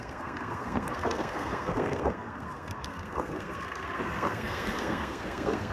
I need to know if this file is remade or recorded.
remade